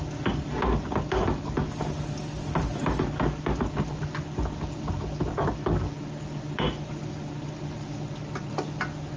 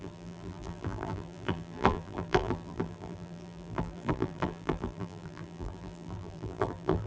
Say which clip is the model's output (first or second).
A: second